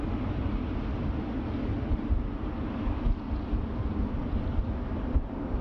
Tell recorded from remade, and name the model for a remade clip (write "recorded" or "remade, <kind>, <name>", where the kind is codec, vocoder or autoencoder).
recorded